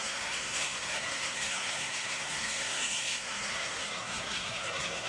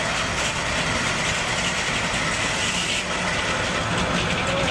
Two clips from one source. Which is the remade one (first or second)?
first